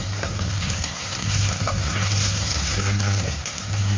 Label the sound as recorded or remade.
remade